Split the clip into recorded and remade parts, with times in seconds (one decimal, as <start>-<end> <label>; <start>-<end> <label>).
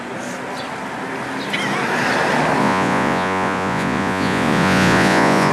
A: 0.0-2.6 recorded; 2.6-5.5 remade